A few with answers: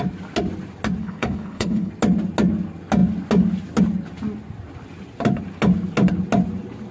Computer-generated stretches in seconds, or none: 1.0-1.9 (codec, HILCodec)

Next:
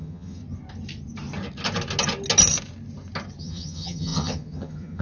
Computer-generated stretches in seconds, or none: 0.0-0.4 (vocoder, HiFi-GAN); 3.4-5.0

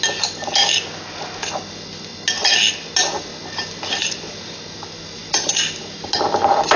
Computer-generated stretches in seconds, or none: none